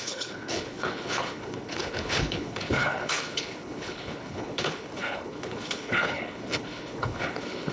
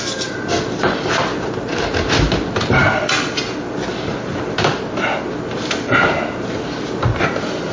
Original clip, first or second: second